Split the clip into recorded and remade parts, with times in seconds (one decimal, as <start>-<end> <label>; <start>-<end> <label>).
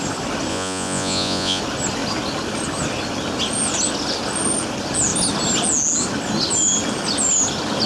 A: 0.0-0.5 recorded; 0.5-1.6 remade; 1.6-7.9 recorded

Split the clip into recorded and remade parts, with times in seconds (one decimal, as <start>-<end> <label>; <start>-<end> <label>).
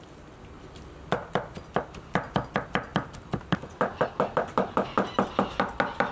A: 0.0-6.1 recorded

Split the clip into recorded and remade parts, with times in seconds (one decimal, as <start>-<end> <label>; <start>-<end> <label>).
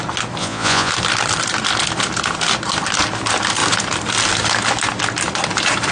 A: 0.0-0.4 recorded; 0.4-0.9 remade; 0.9-5.9 recorded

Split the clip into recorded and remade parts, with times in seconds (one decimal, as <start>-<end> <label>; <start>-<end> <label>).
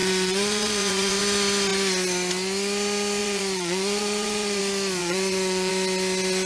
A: 0.0-1.2 remade; 1.2-3.2 recorded; 3.2-4.6 remade; 4.6-5.0 recorded; 5.0-5.7 remade; 5.7-6.5 recorded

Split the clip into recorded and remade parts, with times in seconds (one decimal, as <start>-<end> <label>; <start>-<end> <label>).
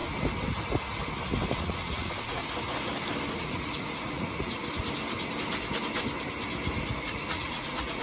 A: 0.0-1.5 recorded; 1.5-2.4 remade; 2.4-3.3 recorded; 3.3-4.6 remade; 4.6-7.0 recorded; 7.0-8.0 remade